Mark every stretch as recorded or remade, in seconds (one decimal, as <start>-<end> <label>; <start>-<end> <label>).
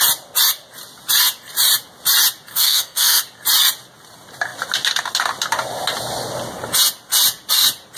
0.0-2.5 recorded; 2.5-3.2 remade; 3.2-8.0 recorded